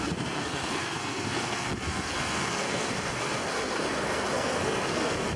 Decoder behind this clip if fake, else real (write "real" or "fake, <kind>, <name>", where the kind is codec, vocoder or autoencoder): fake, codec, SNAC